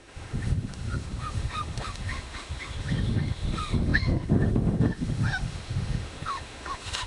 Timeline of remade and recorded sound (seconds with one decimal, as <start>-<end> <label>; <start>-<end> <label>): 0.0-7.1 remade